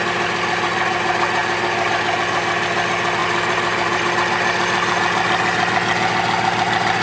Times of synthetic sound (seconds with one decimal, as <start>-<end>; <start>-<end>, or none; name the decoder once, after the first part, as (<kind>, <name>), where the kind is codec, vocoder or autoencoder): 3.2-4.1 (vocoder, BigVGAN v2)

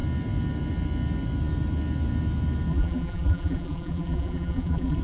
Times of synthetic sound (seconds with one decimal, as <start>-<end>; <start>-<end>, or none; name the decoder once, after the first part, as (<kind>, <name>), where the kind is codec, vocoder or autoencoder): 2.7-5.0 (vocoder, BigVGAN v2)

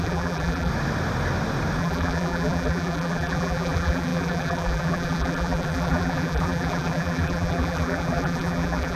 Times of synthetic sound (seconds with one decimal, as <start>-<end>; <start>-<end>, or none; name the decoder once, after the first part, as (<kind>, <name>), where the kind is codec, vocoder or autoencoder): 0.0-0.7 (vocoder, BigVGAN v2); 1.8-9.0

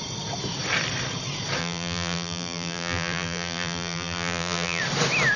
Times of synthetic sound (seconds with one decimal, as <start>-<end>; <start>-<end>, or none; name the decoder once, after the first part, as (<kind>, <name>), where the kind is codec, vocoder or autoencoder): 1.6-4.8 (vocoder, BigVGAN v2)

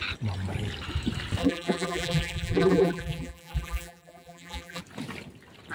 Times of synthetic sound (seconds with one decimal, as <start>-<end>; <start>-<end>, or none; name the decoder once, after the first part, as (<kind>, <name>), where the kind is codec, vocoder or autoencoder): 1.4-4.8 (vocoder, BigVGAN v2)